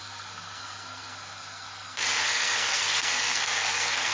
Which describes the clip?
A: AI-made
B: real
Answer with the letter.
A